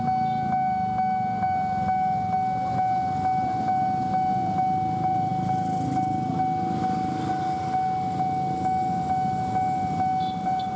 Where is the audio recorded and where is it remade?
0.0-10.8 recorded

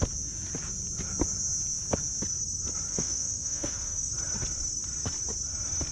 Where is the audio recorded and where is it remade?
0.0-2.9 recorded; 2.9-4.1 remade; 4.1-5.9 recorded